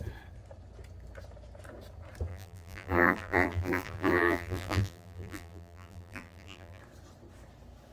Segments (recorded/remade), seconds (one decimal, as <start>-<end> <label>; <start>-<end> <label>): 0.0-2.3 recorded; 2.3-6.8 remade; 6.8-7.9 recorded